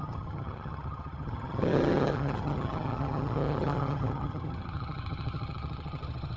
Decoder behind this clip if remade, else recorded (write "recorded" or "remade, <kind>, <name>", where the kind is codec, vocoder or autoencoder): remade, vocoder, HiFi-GAN